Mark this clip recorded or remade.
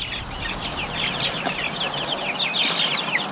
recorded